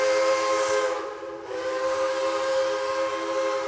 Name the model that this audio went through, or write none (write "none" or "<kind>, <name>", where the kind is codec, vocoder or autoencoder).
none